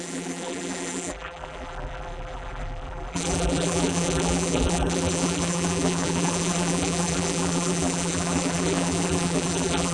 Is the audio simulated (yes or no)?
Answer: yes